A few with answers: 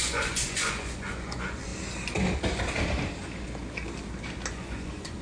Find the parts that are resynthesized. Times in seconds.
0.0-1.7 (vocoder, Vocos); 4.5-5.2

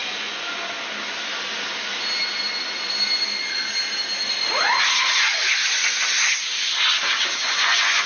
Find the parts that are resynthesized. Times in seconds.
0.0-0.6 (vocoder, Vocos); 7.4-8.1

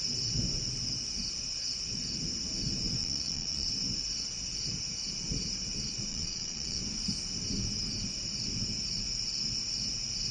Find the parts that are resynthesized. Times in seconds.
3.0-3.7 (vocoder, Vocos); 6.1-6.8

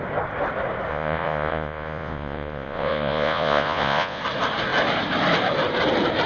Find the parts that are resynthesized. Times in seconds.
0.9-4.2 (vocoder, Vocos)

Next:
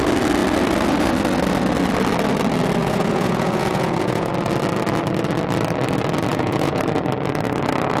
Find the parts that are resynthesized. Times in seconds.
2.8-4.3 (vocoder, Vocos); 6.3-6.8